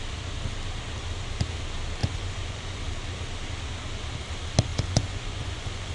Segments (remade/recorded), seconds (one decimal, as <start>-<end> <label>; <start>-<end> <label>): 0.0-2.0 recorded; 2.0-2.8 remade; 2.8-4.7 recorded; 4.7-5.9 remade

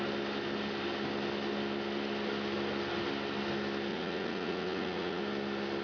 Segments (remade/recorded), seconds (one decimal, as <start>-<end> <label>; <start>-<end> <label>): 0.0-3.9 recorded; 3.9-5.2 remade; 5.2-5.8 recorded

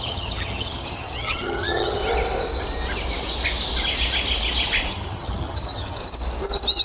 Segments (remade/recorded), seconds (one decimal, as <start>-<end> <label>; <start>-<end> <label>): 0.0-2.0 remade; 2.0-4.9 recorded; 4.9-6.0 remade; 6.0-6.8 recorded

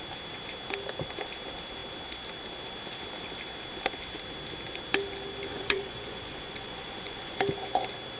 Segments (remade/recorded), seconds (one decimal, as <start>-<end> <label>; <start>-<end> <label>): 0.0-5.5 recorded; 5.5-7.4 remade; 7.4-8.2 recorded